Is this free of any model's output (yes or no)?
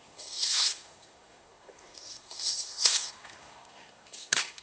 no